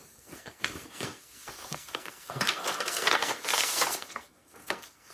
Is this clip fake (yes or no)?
yes